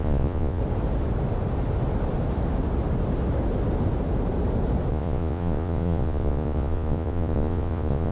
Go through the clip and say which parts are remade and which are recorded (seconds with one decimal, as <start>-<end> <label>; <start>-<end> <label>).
0.0-0.6 remade; 0.6-4.9 recorded; 4.9-8.1 remade